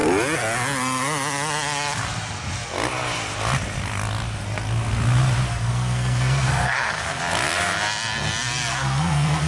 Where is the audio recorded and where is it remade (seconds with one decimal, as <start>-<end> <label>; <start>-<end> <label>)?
0.0-5.5 recorded; 5.5-7.2 remade; 7.2-8.7 recorded; 8.7-9.5 remade